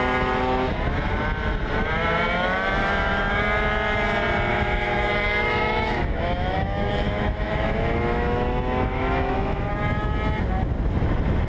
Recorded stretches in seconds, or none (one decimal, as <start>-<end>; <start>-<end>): 0.0-2.8; 3.4-4.5; 9.7-11.5

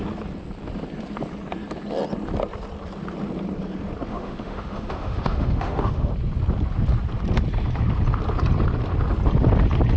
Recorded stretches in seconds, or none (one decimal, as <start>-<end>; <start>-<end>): 0.0-4.1; 6.1-10.0

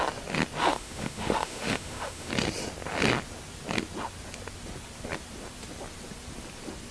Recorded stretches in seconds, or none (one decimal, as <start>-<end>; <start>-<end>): 0.0-0.6; 2.3-6.9

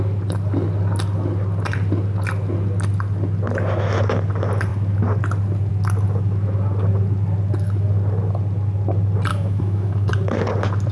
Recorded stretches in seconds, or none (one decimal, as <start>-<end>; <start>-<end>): 0.0-9.3; 10.1-10.9

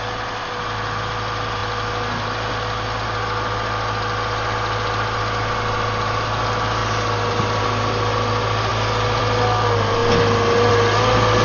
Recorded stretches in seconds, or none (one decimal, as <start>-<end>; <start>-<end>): 0.0-11.4

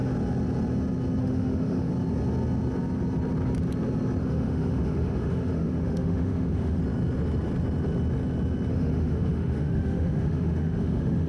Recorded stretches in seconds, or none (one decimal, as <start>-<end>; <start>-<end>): 0.0-1.2; 1.9-4.2; 6.8-8.7